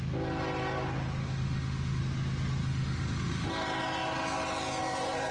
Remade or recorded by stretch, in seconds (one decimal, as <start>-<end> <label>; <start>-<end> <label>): 0.0-1.2 recorded; 1.2-2.0 remade; 2.0-2.6 recorded; 2.6-3.5 remade; 3.5-5.3 recorded